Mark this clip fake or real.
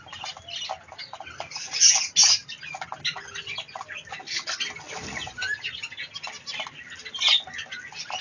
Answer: real